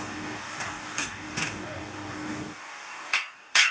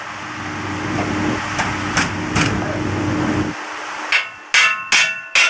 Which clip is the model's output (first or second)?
first